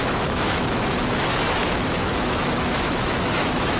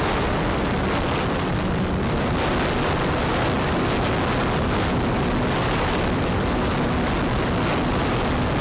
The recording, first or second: second